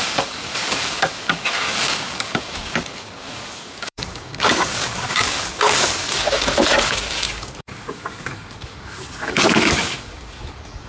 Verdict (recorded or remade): remade